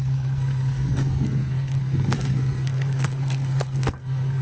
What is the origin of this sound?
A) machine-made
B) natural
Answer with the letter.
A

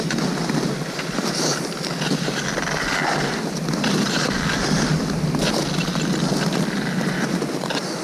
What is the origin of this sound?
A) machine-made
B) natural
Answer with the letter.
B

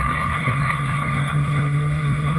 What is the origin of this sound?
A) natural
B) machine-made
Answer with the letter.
B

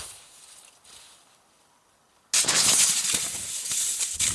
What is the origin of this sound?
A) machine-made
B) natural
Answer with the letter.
B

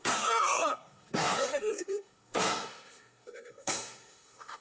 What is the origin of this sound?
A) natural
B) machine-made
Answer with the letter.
B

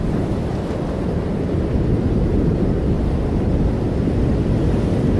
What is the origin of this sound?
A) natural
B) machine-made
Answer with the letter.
A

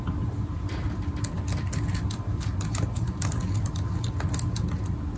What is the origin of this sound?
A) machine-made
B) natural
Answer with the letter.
B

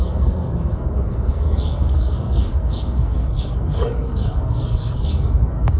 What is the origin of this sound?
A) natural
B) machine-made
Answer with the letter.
B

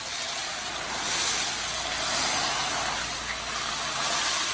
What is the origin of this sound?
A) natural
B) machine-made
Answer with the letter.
A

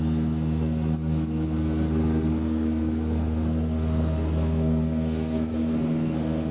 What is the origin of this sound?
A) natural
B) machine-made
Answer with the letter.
B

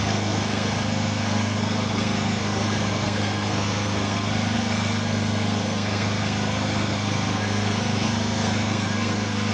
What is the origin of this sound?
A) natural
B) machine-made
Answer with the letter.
B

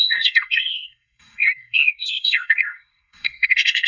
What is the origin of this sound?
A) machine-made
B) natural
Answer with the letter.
A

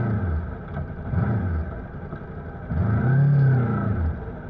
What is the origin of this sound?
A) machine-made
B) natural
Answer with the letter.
B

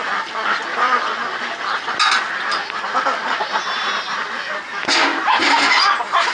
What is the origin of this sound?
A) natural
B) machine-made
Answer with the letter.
A